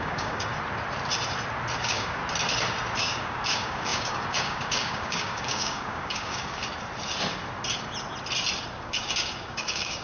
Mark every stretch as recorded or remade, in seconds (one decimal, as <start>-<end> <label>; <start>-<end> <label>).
0.0-0.5 remade; 0.5-1.8 recorded; 1.8-2.2 remade; 2.2-3.0 recorded; 3.0-6.6 remade; 6.6-8.8 recorded; 8.8-10.0 remade

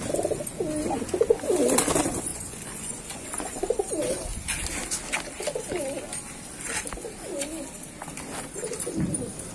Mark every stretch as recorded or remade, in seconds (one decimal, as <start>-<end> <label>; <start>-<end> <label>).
0.0-2.3 recorded; 2.3-3.6 remade; 3.6-9.5 recorded

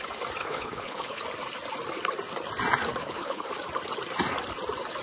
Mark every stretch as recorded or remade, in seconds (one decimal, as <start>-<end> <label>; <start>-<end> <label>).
0.0-0.4 recorded; 0.4-1.2 remade; 1.2-3.0 recorded; 3.0-3.5 remade; 3.5-5.0 recorded

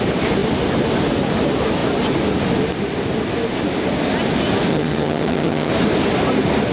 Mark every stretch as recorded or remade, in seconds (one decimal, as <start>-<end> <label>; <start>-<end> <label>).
0.0-4.7 recorded; 4.7-5.7 remade; 5.7-6.7 recorded

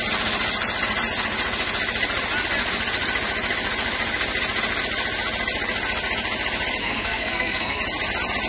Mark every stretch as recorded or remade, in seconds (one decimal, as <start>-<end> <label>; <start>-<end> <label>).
0.0-6.8 recorded; 6.8-7.8 remade; 7.8-8.5 recorded

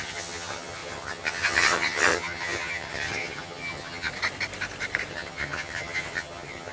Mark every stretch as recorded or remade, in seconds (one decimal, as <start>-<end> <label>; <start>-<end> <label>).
0.0-4.1 remade; 4.1-5.1 recorded; 5.1-6.7 remade